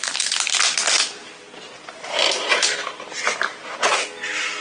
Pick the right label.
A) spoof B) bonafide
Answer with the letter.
B